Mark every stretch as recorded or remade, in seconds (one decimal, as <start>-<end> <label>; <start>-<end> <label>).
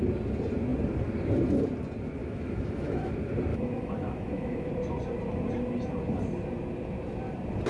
0.0-2.2 recorded; 2.2-3.1 remade; 3.1-3.5 recorded; 3.5-4.7 remade; 4.7-7.7 recorded